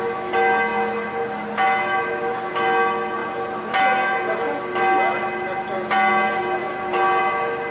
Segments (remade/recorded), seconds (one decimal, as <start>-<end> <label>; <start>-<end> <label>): 0.0-7.7 recorded